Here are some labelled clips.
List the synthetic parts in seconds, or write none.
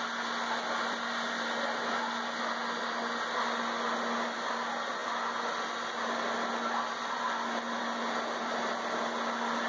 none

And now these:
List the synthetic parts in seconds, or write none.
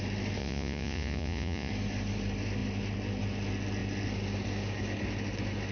0.4-1.7 (vocoder, Vocos)